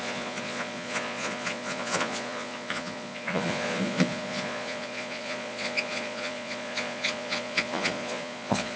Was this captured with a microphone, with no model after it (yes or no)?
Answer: no